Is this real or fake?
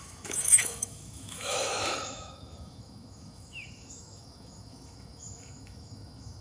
fake